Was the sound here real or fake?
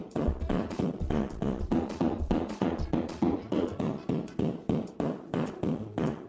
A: fake